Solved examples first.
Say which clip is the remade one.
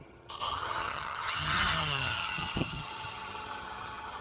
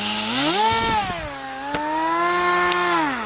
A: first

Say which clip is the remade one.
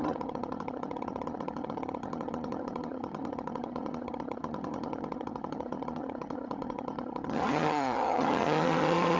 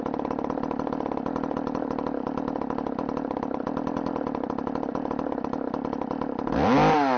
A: first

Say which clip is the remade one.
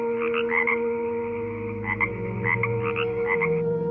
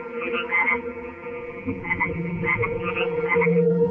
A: second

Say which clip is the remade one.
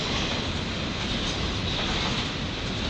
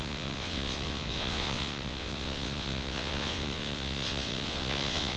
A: second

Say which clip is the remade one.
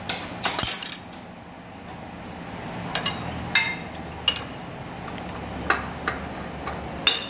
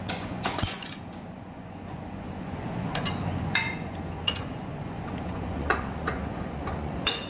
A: second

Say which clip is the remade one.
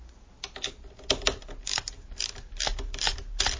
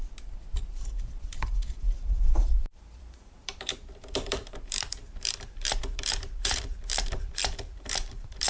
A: second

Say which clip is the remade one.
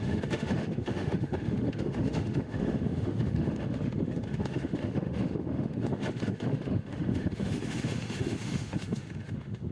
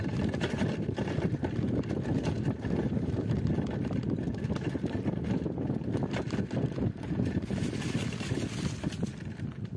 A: first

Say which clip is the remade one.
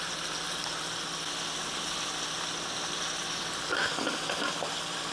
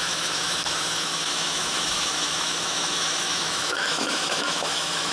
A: second